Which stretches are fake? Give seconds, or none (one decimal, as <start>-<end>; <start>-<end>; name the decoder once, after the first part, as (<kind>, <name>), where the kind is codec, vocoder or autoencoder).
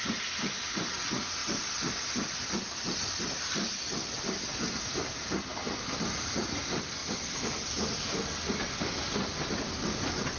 none